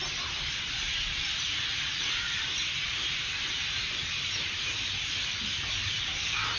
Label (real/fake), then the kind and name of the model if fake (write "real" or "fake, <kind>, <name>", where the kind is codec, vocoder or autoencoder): fake, vocoder, BigVGAN v2